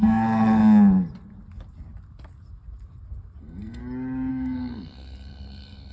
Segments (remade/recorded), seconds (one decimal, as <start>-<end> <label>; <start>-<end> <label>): 0.0-0.6 remade; 0.6-3.4 recorded; 3.4-3.8 remade; 3.8-4.3 recorded; 4.3-5.9 remade